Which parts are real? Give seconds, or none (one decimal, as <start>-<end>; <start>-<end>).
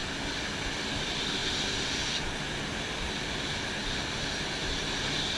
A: 0.0-5.4